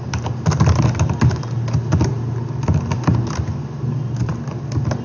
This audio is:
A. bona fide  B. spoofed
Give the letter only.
A